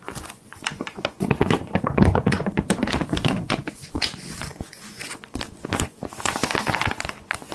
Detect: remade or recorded remade